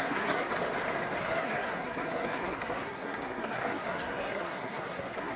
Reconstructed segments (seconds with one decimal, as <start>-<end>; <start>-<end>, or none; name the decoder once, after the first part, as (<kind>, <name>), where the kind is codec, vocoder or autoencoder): 0.0-0.5 (codec, SNAC); 1.2-5.4